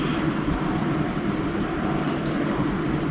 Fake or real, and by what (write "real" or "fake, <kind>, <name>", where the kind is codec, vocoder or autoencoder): fake, vocoder, BigVGAN v2